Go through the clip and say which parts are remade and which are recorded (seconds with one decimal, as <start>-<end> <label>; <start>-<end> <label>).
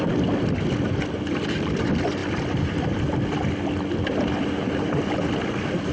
0.0-5.9 recorded